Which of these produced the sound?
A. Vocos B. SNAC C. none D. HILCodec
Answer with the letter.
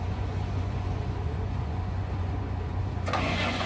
A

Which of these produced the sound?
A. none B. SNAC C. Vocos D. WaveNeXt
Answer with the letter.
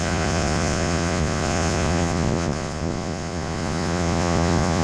C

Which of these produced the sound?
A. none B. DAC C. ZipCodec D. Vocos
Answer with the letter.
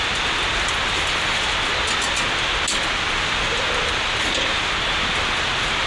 A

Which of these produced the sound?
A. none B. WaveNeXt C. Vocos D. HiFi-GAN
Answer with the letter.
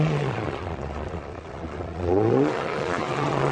C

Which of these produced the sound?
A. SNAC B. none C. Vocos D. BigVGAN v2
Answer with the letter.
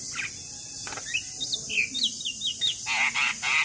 B